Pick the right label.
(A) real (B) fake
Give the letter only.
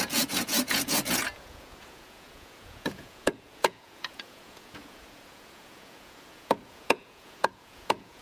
B